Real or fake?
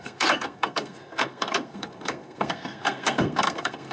fake